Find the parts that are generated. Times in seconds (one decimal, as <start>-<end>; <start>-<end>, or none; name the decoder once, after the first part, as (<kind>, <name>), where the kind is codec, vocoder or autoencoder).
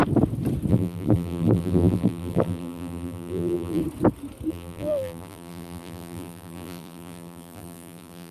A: 0.7-3.8 (vocoder, BigVGAN v2); 4.5-8.3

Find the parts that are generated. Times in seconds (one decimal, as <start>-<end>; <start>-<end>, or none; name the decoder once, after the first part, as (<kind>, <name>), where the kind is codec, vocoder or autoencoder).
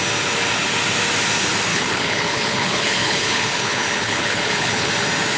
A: 1.7-4.9 (codec, HILCodec)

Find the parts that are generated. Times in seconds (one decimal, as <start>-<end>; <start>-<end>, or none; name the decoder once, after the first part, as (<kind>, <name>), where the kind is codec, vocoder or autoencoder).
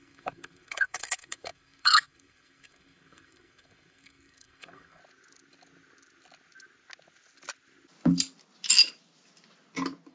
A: 0.0-5.0 (codec, SNAC)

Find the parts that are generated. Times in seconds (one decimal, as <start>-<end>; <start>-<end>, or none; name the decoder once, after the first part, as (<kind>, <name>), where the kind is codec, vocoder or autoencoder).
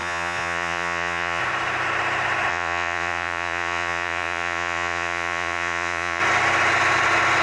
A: 0.0-1.4 (vocoder, Vocos); 2.5-6.2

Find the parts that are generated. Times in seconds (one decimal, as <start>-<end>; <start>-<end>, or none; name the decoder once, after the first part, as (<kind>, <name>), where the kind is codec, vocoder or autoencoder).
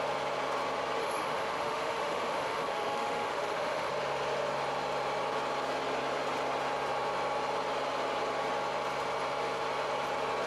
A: 1.0-3.9 (autoencoder, DAC-VAE)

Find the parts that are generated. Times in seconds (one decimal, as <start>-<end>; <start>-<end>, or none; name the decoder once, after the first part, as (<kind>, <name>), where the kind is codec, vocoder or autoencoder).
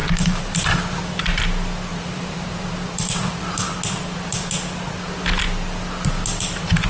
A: 0.0-1.0 (vocoder, BigVGAN v2); 1.9-3.7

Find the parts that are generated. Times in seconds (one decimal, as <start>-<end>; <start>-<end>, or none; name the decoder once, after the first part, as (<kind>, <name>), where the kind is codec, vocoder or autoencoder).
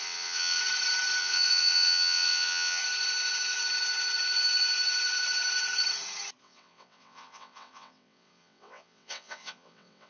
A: 0.0-0.6 (vocoder, WaveNeXt); 1.2-2.8; 6.4-10.1